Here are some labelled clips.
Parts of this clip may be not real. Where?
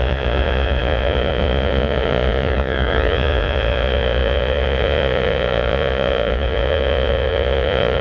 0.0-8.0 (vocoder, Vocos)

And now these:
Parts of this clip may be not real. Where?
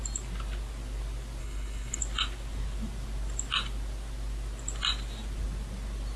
1.4-2.0 (codec, HILCodec)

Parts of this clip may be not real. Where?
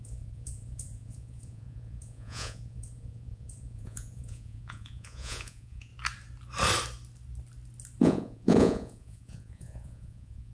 0.0-5.9 (vocoder, Vocos); 8.0-10.5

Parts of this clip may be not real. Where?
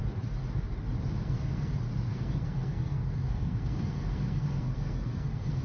1.2-1.7 (codec, SNAC); 2.1-5.6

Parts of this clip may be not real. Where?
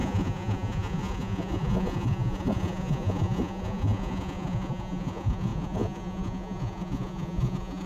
0.0-7.9 (vocoder, Vocos)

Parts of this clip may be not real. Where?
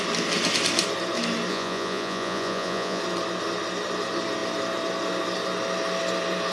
1.5-3.0 (vocoder, Vocos)